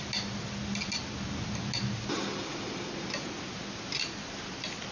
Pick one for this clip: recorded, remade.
recorded